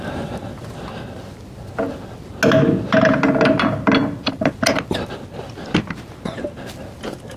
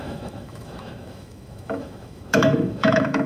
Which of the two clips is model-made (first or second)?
second